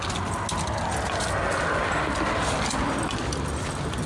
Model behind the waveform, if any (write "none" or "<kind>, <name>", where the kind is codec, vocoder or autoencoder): none